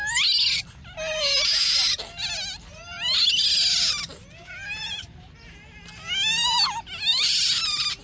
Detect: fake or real real